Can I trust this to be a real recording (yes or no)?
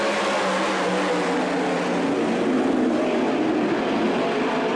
yes